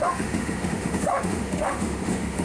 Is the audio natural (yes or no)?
no